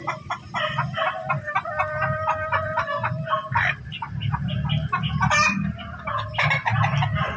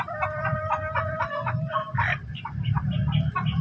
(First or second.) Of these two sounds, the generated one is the second